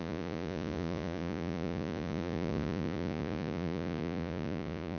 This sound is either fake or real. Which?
fake